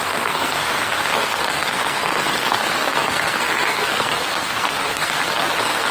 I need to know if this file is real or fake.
fake